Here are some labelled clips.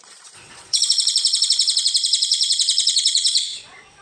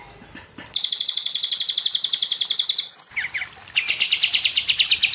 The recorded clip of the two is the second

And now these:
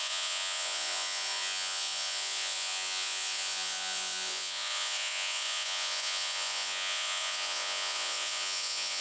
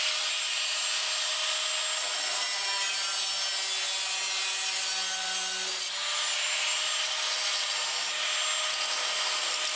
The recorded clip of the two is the second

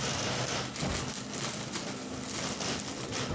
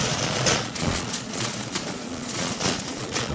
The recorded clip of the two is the first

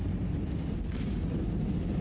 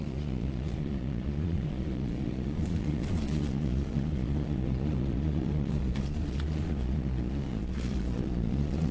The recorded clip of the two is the first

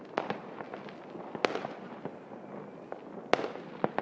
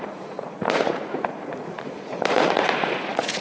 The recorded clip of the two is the first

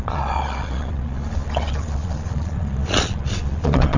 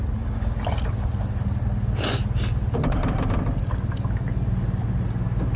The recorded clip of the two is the second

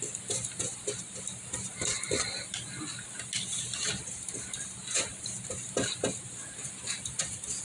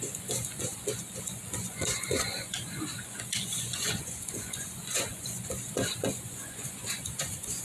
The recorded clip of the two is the first